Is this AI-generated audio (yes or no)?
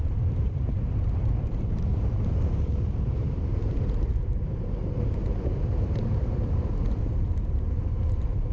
yes